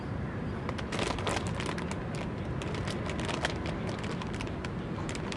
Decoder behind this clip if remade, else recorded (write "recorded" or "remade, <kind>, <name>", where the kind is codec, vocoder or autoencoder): remade, vocoder, BigVGAN v2